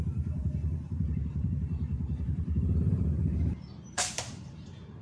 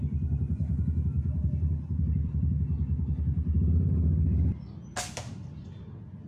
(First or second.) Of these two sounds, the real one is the second